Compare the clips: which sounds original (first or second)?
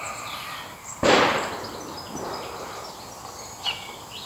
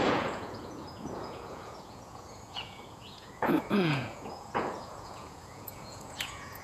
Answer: first